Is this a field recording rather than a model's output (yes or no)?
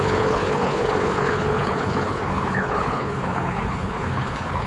no